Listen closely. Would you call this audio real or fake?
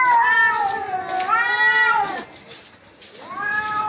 real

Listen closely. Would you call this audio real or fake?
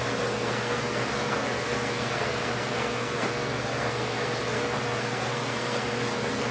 fake